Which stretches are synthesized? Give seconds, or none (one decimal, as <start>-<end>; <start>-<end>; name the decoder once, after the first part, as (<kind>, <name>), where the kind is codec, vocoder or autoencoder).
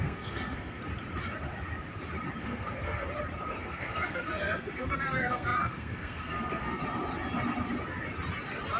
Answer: 0.0-0.8 (codec, SNAC); 2.4-3.0; 3.6-6.8